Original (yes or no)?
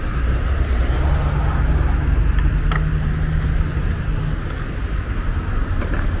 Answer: yes